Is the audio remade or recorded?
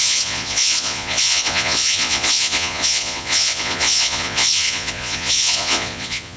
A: remade